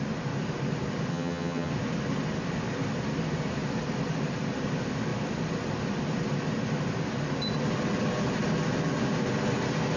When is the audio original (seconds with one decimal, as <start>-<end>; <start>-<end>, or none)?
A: 0.0-1.1; 1.7-10.0